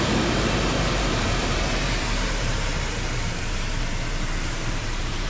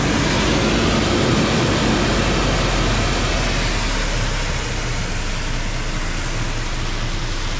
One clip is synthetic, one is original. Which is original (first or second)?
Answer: second